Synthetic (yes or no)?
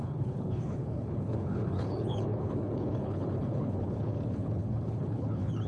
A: yes